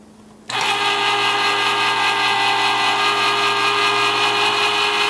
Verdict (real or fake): real